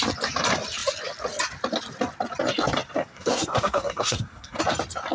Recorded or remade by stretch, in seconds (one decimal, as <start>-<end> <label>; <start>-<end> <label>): 0.0-3.0 recorded; 3.0-4.6 remade; 4.6-5.1 recorded